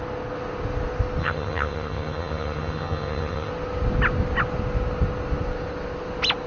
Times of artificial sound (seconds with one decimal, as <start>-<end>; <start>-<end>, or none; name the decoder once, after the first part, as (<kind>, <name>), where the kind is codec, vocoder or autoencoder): 1.2-3.5 (vocoder, HiFi-GAN)